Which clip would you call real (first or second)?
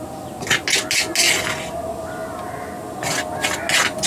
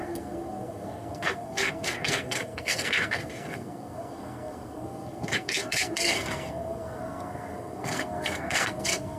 first